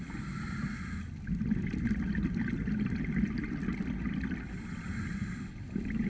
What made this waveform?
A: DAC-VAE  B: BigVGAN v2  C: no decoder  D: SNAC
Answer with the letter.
C